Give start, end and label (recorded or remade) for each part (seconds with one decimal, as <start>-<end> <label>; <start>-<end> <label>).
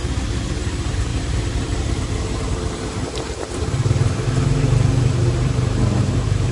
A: 0.0-0.6 recorded; 0.6-6.5 remade